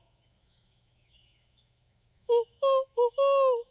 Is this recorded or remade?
remade